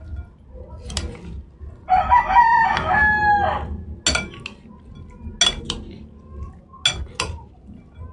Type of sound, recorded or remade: recorded